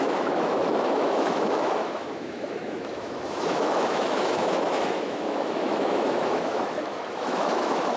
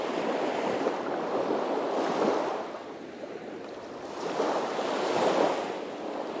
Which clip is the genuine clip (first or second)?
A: second